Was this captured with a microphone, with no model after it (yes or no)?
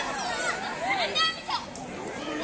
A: yes